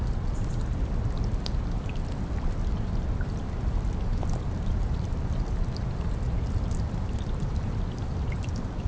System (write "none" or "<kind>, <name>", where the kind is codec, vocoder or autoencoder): vocoder, BigVGAN v2